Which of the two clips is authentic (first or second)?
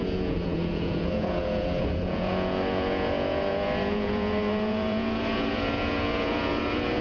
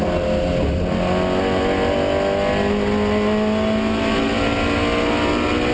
second